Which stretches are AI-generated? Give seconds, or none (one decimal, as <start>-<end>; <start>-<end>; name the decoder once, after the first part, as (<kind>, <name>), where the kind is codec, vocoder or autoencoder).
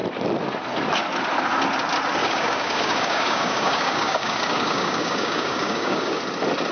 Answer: 2.2-6.2 (codec, DAC)